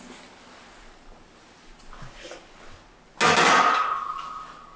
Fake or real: real